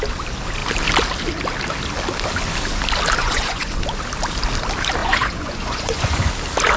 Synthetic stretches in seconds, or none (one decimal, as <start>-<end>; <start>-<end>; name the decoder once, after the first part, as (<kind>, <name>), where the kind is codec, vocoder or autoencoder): 3.2-3.8 (vocoder, Vocos); 5.0-6.3